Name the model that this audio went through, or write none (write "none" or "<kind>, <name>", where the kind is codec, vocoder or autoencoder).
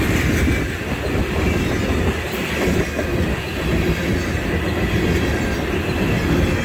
none